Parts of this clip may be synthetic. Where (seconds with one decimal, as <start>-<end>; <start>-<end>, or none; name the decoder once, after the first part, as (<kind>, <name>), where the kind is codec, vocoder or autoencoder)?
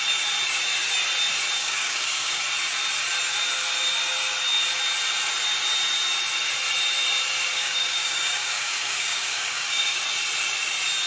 1.6-2.4 (codec, DAC); 7.5-10.0